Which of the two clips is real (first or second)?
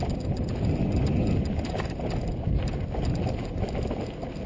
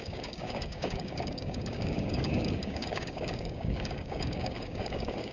first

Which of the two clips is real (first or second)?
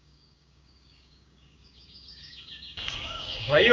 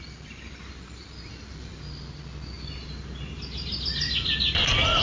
second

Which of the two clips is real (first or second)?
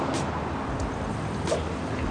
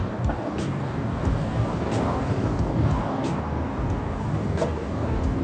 first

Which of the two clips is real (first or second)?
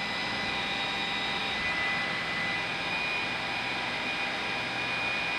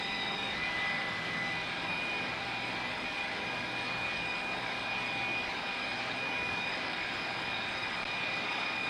first